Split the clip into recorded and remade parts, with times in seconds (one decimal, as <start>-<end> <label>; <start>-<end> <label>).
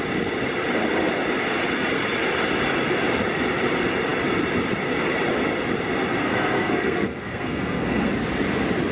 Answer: 0.0-6.2 recorded; 6.2-8.1 remade; 8.1-8.9 recorded